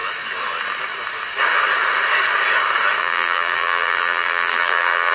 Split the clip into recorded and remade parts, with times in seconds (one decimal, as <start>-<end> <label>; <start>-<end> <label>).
0.0-3.0 recorded; 3.0-5.1 remade